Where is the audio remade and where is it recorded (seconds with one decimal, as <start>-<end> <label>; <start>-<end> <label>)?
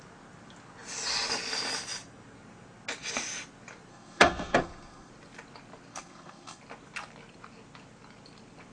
0.0-3.9 recorded; 3.9-5.1 remade; 5.1-5.9 recorded; 5.9-6.6 remade; 6.6-8.7 recorded